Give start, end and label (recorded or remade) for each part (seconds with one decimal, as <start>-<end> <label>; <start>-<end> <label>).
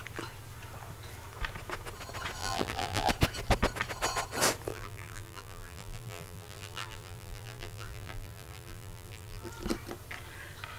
0.0-2.4 recorded; 2.4-3.1 remade; 3.1-4.7 recorded; 4.7-9.5 remade; 9.5-10.8 recorded